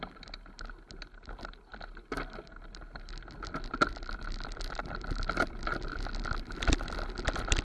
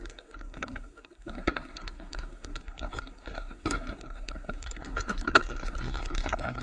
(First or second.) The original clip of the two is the first